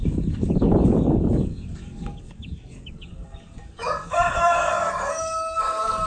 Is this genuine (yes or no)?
no